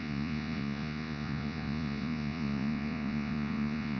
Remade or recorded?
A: remade